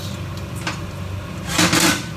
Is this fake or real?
real